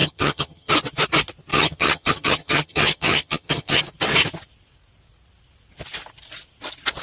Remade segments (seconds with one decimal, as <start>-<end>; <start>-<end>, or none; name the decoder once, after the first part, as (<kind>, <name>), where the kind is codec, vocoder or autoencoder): 0.0-0.7 (vocoder, HiFi-GAN); 1.5-3.8